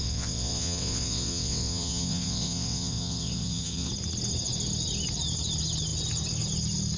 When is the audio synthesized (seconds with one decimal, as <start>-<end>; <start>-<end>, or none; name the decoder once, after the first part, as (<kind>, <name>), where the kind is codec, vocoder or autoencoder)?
0.0-3.9 (vocoder, WaveNeXt)